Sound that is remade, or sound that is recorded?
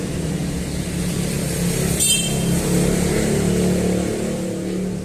recorded